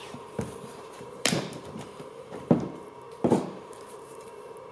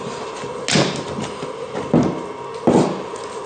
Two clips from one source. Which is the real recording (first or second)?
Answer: second